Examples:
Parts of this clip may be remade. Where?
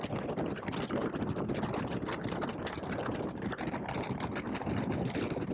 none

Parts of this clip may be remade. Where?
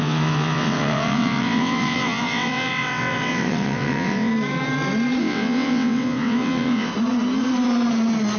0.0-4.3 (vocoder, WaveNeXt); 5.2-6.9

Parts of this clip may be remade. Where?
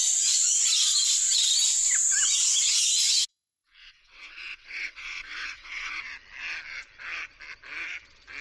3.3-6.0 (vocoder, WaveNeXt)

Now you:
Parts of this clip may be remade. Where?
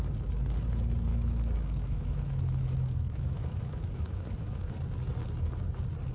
1.1-4.7 (autoencoder, DAC-VAE)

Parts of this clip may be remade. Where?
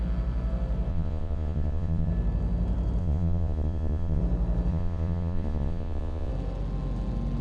0.9-2.1 (vocoder, Vocos); 3.0-4.2; 4.7-6.3